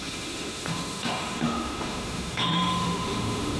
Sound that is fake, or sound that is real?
fake